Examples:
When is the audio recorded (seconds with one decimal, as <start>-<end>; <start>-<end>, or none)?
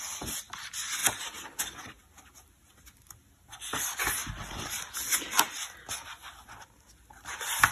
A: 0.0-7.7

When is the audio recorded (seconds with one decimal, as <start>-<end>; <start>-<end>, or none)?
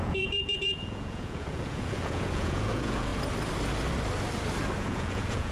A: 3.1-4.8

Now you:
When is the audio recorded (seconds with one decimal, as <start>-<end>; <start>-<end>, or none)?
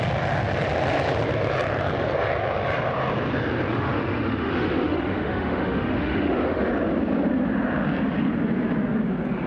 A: 0.0-3.7; 6.7-9.5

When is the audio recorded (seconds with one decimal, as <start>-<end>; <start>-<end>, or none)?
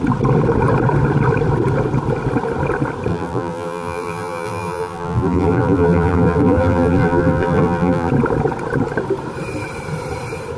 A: 0.0-3.1; 8.1-10.6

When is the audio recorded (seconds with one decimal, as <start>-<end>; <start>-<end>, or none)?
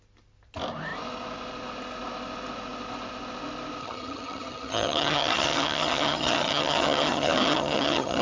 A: 0.0-3.8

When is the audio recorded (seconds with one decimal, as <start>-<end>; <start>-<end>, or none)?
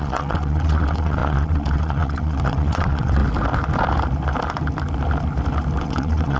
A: 3.2-5.8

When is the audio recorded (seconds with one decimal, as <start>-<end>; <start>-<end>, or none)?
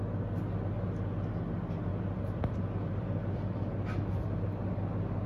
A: 0.0-5.3